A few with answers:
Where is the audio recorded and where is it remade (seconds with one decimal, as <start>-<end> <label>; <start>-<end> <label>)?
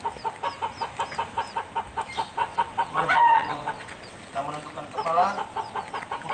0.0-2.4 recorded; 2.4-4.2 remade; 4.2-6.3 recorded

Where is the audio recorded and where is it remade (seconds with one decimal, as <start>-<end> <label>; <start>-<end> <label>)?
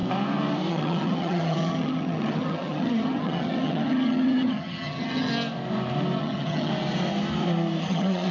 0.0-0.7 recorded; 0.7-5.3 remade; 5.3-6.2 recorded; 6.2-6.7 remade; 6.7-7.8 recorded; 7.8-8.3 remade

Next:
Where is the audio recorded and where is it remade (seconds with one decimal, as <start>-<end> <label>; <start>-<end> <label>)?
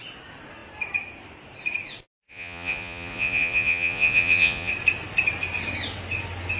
0.0-2.2 recorded; 2.2-4.7 remade; 4.7-6.6 recorded